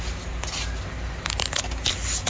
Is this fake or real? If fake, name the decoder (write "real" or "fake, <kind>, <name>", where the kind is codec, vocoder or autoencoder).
real